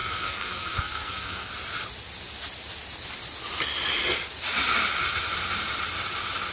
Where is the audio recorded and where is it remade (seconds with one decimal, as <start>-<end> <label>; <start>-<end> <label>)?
0.0-1.5 remade; 1.5-6.5 recorded

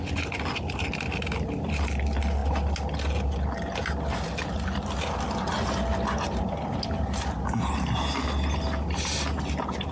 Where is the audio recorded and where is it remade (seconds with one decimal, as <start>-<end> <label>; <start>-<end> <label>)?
0.0-9.9 recorded

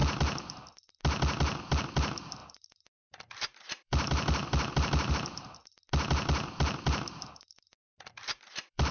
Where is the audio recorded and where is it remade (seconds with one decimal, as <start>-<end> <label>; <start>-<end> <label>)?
0.0-1.8 recorded; 1.8-5.6 remade; 5.6-6.7 recorded; 6.7-8.9 remade

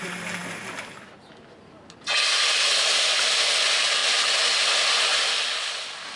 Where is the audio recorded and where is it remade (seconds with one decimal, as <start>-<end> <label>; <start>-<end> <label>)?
0.0-6.2 recorded

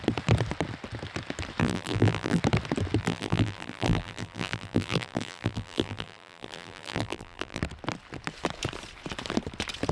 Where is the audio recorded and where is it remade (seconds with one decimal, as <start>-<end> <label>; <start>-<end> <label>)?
0.0-1.6 recorded; 1.6-2.4 remade; 2.4-3.0 recorded; 3.0-7.6 remade; 7.6-9.9 recorded

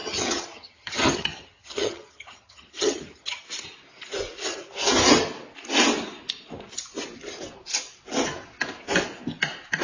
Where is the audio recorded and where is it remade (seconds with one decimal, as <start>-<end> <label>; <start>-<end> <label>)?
0.0-3.4 remade; 3.4-9.8 recorded